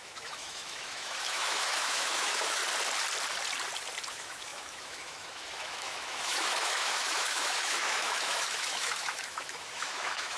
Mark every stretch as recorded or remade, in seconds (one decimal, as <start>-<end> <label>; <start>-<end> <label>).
0.0-2.6 remade; 2.6-4.1 recorded; 4.1-10.4 remade